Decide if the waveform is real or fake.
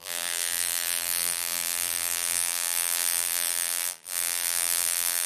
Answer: fake